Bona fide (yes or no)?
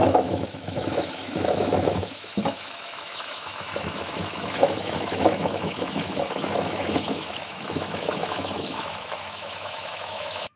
no